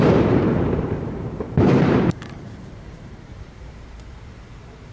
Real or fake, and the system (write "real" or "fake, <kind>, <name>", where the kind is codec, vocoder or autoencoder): fake, vocoder, BigVGAN v2